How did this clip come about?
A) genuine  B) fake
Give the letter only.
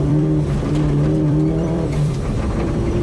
B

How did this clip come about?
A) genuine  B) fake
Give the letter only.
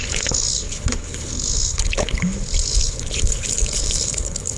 B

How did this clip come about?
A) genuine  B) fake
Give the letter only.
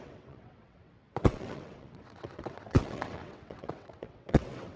B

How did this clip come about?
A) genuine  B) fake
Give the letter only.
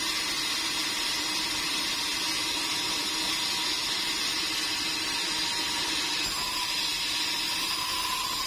A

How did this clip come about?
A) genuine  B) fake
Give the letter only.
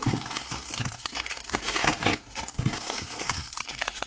B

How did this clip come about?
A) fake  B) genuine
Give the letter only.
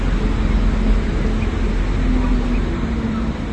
B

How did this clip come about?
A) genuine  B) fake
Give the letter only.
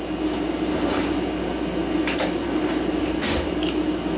A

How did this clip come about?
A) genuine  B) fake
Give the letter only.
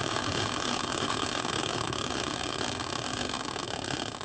B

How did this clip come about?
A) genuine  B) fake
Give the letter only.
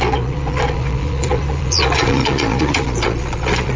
B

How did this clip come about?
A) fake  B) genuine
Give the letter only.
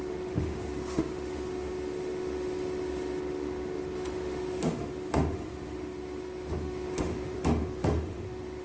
A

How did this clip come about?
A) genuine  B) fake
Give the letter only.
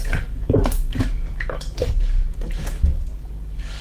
B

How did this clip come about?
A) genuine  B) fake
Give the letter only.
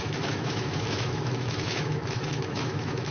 B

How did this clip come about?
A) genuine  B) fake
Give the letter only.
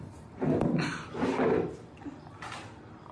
A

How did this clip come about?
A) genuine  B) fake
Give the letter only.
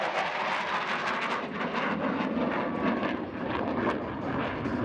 A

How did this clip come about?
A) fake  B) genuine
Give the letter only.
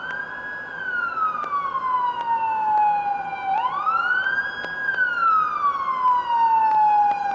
B